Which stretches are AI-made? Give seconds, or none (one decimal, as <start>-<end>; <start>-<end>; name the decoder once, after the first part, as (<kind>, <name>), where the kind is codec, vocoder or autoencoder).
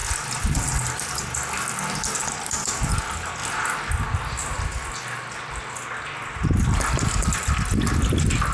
none